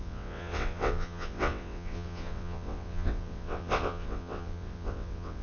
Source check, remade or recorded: remade